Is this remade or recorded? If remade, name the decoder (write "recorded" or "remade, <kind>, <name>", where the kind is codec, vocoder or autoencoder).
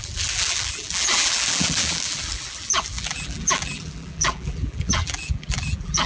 remade, vocoder, BigVGAN v2